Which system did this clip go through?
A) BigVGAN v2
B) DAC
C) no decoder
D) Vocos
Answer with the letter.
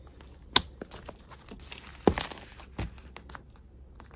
C